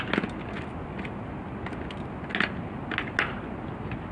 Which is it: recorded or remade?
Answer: recorded